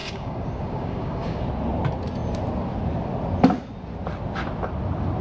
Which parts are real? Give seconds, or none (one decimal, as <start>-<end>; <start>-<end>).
1.4-5.2